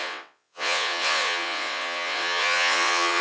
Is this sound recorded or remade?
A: remade